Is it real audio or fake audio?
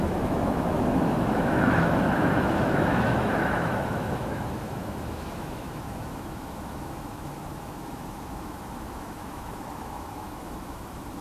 fake